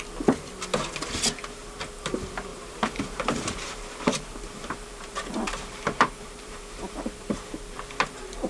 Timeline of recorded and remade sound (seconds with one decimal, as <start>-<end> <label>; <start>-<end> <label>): 0.0-2.5 recorded; 2.5-7.5 remade; 7.5-8.5 recorded